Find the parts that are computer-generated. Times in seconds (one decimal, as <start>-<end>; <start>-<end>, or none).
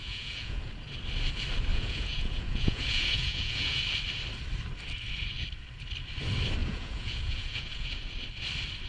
0.0-0.6; 1.7-3.8; 6.6-8.1